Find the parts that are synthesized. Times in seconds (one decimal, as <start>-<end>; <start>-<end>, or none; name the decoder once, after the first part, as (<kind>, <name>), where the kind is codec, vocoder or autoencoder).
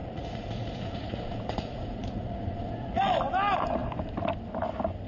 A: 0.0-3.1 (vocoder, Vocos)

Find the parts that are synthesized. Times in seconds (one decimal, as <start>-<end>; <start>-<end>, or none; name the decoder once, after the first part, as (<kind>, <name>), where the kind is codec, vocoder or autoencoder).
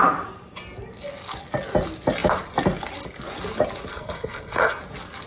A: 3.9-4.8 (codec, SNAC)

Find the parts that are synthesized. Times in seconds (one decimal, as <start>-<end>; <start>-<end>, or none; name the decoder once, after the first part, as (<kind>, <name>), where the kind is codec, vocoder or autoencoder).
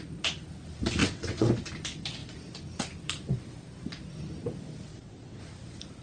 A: 1.0-1.5 (vocoder, WaveNeXt); 4.9-5.4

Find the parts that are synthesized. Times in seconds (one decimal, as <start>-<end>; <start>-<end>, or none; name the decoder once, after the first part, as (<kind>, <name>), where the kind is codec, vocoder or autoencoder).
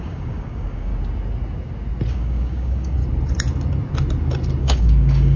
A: 0.0-0.9 (codec, DAC); 2.1-3.0; 4.6-5.4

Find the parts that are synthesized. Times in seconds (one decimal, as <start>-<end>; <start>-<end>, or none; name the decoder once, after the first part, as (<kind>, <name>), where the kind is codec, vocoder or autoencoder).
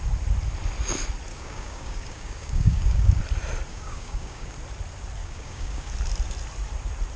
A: 1.3-3.2 (codec, DAC); 3.7-4.5; 5.2-5.9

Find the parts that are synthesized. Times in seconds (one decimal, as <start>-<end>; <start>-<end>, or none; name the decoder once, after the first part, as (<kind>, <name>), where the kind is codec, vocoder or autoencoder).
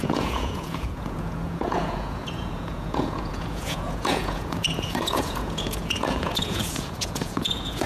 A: 0.0-7.9 (vocoder, Vocos)